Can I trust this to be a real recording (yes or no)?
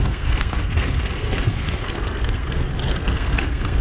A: no